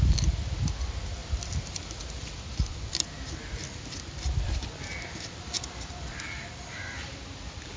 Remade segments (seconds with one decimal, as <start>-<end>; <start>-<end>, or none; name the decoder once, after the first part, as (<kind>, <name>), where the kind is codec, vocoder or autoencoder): 1.2-2.3 (vocoder, BigVGAN v2); 2.7-6.7